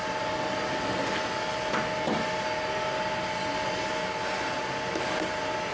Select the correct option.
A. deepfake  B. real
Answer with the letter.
B